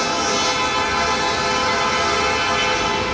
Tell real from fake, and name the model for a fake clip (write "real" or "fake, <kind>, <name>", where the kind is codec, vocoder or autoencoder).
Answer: real